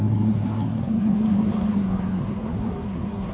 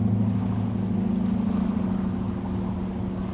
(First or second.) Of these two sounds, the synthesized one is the first